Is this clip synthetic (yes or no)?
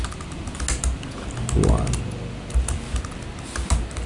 no